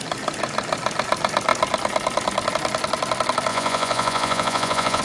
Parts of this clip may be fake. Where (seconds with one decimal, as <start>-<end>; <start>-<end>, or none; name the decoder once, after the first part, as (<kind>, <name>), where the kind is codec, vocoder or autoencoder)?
3.5-5.0 (vocoder, Vocos)

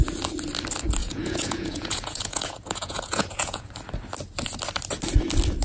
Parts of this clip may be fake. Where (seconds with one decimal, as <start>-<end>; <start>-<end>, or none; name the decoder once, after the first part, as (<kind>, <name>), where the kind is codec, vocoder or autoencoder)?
1.0-3.7 (vocoder, Vocos)